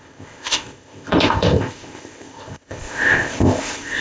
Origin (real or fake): fake